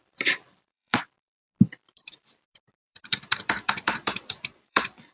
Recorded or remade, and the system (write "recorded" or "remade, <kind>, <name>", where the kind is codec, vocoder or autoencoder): remade, vocoder, BigVGAN v2